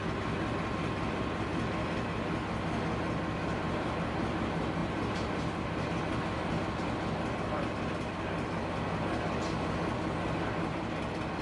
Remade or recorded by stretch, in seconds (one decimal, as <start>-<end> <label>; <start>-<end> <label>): 0.0-3.5 recorded; 3.5-4.2 remade; 4.2-4.8 recorded; 4.8-6.0 remade; 6.0-11.4 recorded